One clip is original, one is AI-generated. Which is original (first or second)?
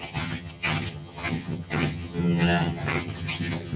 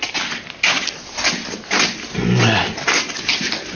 second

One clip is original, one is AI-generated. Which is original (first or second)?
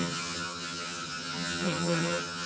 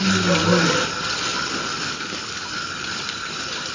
second